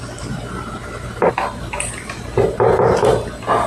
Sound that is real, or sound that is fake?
real